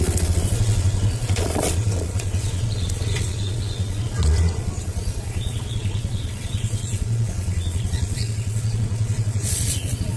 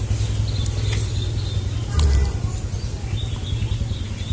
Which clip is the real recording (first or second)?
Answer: second